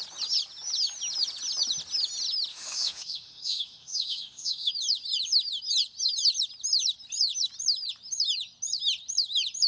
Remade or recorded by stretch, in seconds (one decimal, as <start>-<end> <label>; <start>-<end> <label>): 0.0-2.5 recorded; 2.5-4.7 remade; 4.7-9.7 recorded